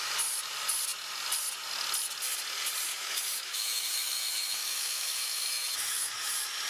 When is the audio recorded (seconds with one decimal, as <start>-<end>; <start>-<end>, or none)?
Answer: 0.0-2.9; 6.3-6.7